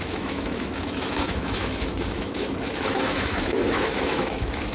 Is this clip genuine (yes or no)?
no